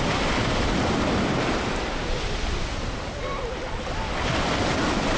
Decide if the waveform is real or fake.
real